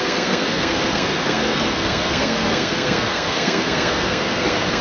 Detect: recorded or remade remade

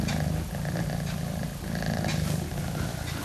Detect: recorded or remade recorded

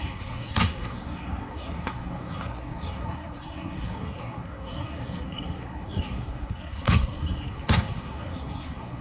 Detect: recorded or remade remade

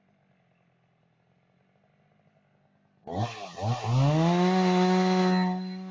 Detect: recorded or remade recorded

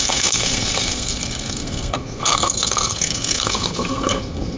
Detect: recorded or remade remade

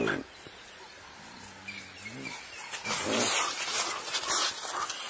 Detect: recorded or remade recorded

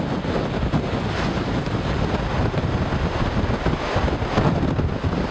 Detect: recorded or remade recorded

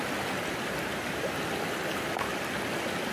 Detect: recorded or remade recorded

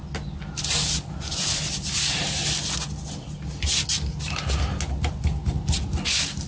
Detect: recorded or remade recorded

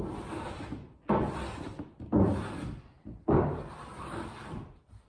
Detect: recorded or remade recorded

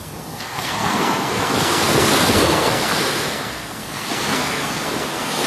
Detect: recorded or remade remade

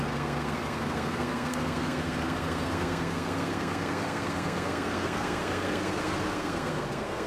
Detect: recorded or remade remade